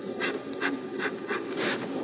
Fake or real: real